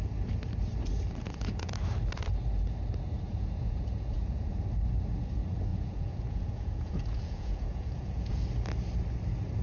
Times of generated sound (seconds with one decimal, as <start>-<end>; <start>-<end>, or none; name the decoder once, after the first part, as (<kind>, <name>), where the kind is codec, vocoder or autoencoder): 1.2-1.7 (vocoder, Vocos); 3.3-4.5; 5.7-8.4